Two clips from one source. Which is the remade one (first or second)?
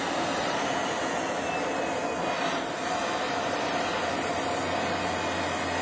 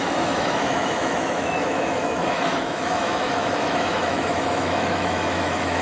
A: second